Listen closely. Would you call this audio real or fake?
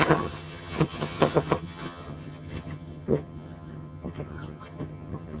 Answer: fake